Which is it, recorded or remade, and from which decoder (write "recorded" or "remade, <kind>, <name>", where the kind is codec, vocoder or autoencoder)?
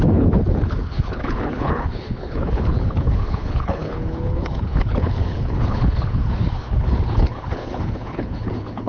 remade, codec, HILCodec